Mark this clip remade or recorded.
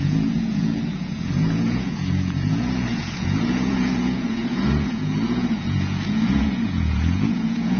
remade